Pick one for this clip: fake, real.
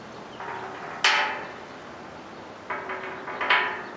real